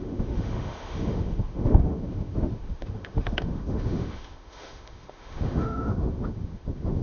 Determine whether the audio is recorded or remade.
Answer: remade